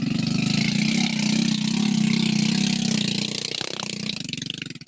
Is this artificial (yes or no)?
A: no